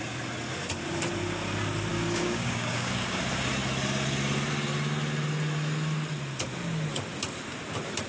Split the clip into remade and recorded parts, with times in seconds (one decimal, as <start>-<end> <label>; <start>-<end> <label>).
0.0-1.9 recorded; 1.9-3.2 remade; 3.2-8.1 recorded